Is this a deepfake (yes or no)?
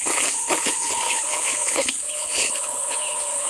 yes